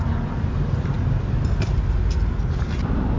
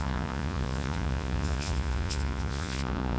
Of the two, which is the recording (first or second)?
first